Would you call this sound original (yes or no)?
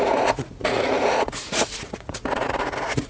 no